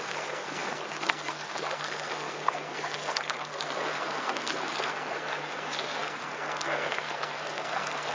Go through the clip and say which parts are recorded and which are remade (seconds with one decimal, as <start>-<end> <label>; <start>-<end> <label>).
0.0-8.1 remade